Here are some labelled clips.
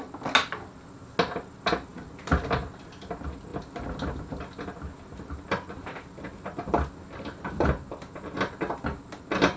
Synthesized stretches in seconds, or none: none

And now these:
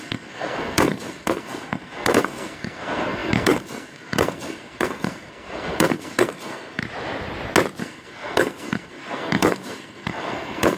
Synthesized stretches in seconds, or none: 0.0-6.8 (codec, SNAC); 7.8-10.8

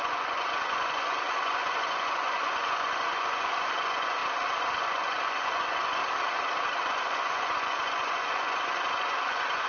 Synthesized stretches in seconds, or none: 0.0-4.2 (vocoder, Vocos); 4.8-6.0; 6.8-9.7

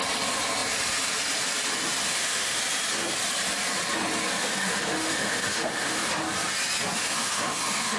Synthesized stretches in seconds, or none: 2.1-2.6 (autoencoder, DAC-VAE); 4.4-6.1; 7.0-8.0

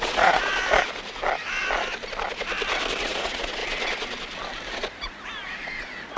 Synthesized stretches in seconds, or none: 0.0-0.5 (vocoder, Vocos); 3.0-3.6; 4.7-6.2